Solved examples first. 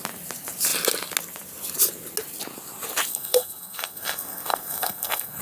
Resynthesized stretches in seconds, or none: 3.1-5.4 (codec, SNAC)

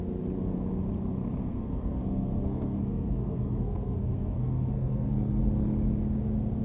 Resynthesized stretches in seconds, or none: 1.4-5.4 (codec, SNAC)

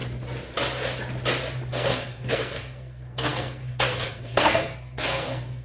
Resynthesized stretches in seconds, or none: 1.7-5.6 (codec, SNAC)

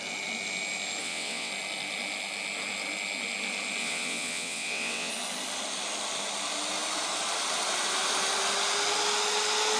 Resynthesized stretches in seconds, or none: 1.0-1.5 (vocoder, WaveNeXt); 3.8-5.1

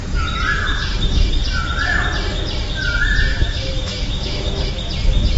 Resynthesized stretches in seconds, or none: 0.6-1.3 (autoencoder, DAC-VAE); 3.3-4.7

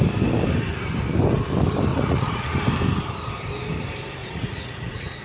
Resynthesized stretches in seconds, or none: 1.9-2.5 (vocoder, Vocos); 4.2-5.2